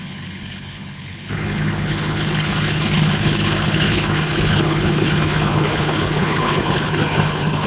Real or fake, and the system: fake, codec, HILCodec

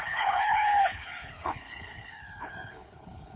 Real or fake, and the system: fake, codec, HILCodec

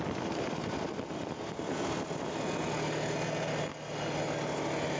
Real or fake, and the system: real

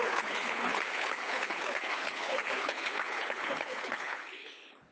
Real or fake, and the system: fake, codec, HILCodec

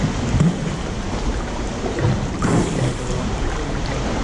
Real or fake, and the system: real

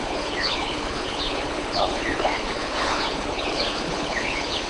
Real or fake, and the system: fake, codec, HILCodec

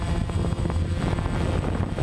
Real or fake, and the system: real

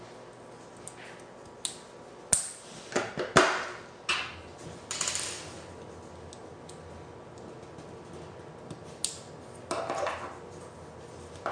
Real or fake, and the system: real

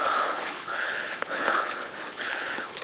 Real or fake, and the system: fake, codec, HILCodec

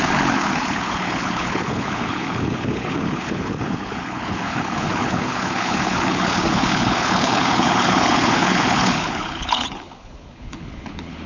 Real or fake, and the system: fake, codec, HILCodec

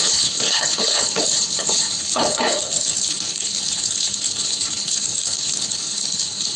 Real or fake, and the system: fake, codec, HILCodec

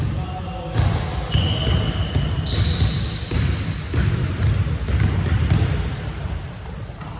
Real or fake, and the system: real